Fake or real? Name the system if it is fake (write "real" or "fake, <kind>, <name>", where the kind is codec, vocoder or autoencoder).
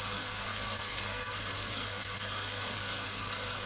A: fake, codec, SNAC